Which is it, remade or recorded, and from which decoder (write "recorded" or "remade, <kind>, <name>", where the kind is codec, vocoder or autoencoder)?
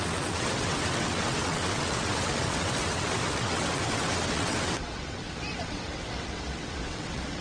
remade, vocoder, WaveNeXt